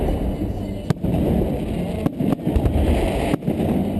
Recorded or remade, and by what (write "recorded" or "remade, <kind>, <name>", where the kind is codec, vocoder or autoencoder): recorded